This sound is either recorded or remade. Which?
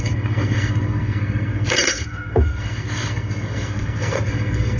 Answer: remade